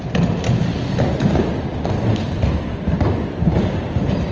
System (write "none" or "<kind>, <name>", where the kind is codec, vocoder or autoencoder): none